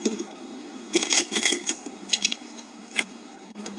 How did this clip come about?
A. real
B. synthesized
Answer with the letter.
B